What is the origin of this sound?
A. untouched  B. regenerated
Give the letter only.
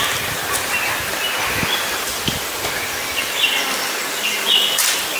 A